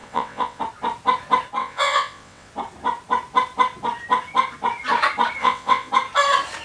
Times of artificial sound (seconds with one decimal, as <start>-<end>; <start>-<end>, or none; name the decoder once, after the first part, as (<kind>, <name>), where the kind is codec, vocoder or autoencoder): 0.0-0.6 (vocoder, WaveNeXt); 1.6-2.5; 5.4-5.9